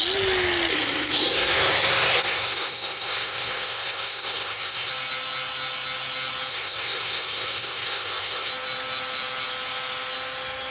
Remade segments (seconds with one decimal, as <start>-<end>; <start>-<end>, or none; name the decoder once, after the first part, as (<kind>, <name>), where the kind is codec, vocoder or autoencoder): 0.7-4.9 (codec, SNAC); 6.5-8.5